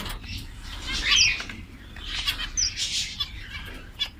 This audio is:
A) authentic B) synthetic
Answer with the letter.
A